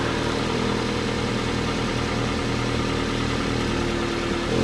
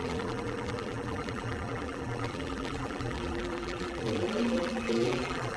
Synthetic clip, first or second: second